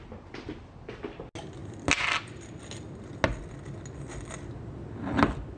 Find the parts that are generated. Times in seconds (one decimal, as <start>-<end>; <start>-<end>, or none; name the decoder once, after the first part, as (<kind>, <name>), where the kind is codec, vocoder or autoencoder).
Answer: none